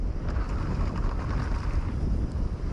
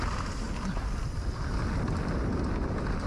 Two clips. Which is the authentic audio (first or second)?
second